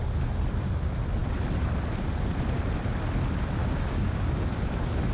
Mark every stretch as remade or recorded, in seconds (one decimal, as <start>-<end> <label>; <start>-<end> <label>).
0.0-3.6 recorded; 3.6-4.5 remade; 4.5-5.1 recorded

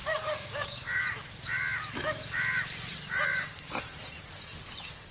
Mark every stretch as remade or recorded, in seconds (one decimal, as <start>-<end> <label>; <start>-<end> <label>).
0.0-1.0 remade; 1.0-3.3 recorded; 3.3-3.8 remade; 3.8-5.1 recorded

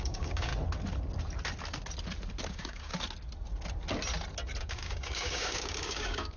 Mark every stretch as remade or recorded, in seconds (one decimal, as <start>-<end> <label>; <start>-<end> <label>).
0.0-0.5 remade; 0.5-2.5 recorded; 2.5-2.9 remade; 2.9-4.6 recorded; 4.6-6.4 remade

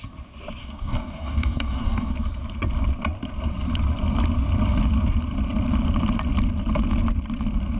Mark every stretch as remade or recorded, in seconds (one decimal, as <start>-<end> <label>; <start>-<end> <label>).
0.0-0.6 recorded; 0.6-2.1 remade; 2.1-7.8 recorded

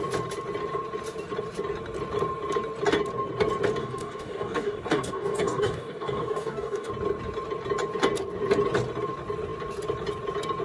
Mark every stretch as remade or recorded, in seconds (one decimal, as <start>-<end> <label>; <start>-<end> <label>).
0.0-3.8 recorded; 3.8-6.9 remade; 6.9-10.6 recorded